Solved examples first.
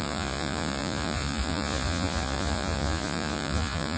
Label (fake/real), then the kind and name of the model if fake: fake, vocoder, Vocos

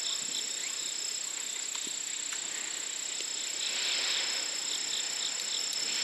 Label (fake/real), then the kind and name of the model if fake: fake, vocoder, BigVGAN v2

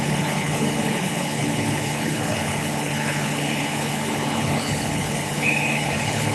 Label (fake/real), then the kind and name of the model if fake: fake, codec, HILCodec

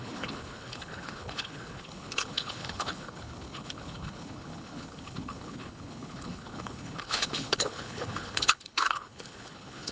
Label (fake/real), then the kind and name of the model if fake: fake, codec, HILCodec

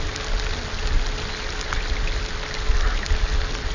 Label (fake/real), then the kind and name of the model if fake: real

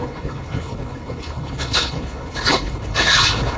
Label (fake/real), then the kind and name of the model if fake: fake, codec, HILCodec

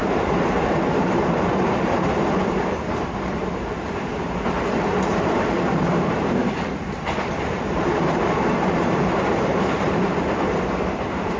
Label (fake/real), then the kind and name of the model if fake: fake, vocoder, BigVGAN v2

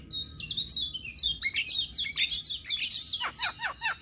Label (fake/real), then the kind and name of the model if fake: real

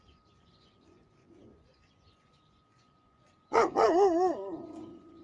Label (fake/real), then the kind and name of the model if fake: fake, vocoder, Vocos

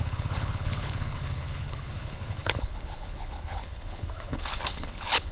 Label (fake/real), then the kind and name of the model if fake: fake, codec, HILCodec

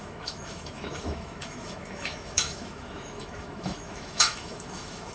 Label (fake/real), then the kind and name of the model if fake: fake, autoencoder, DAC-VAE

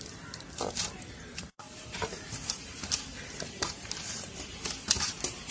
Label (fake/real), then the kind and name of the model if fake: fake, vocoder, BigVGAN v2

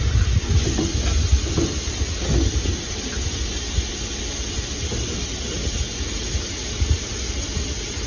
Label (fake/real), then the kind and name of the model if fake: real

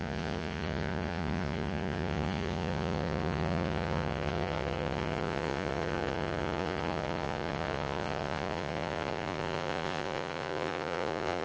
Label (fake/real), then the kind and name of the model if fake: fake, vocoder, Vocos